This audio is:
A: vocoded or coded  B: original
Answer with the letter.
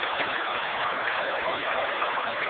A